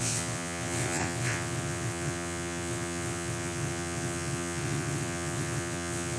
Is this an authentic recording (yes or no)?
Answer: no